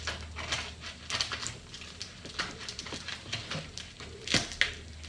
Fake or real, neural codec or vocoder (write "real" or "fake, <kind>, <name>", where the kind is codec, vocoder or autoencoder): real